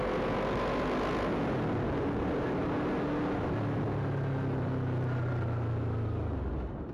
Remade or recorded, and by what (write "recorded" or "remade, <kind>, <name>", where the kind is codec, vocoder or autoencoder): recorded